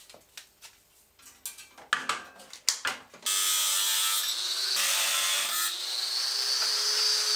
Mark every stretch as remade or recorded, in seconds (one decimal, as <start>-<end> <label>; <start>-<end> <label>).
0.0-7.4 recorded